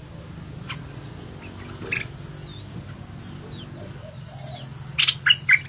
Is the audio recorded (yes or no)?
yes